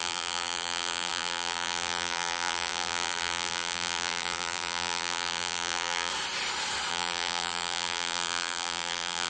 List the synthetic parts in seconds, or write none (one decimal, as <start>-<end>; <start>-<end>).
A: 0.0-6.1; 6.9-9.3